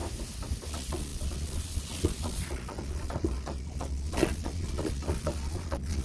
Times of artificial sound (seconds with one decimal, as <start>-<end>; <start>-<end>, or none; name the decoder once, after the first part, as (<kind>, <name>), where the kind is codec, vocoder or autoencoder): 0.7-6.0 (vocoder, Vocos)